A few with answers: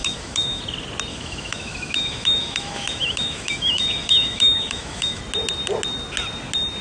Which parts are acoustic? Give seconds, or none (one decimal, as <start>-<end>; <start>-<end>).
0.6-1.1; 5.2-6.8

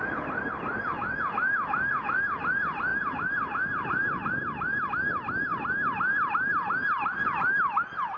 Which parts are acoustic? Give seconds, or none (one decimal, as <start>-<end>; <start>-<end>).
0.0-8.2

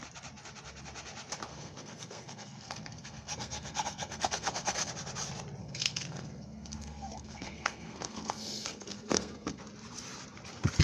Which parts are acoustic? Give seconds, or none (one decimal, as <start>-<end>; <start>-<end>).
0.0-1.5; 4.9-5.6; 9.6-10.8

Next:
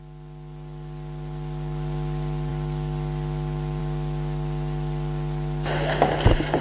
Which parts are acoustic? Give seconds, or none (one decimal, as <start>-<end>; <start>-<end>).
0.0-6.6

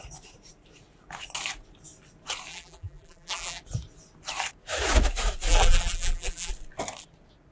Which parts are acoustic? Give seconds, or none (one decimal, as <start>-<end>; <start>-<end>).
0.0-2.5; 3.6-5.5; 6.5-7.5